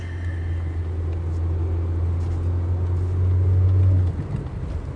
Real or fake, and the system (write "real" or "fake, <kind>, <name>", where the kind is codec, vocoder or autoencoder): real